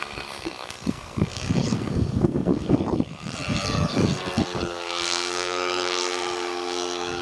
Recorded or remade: remade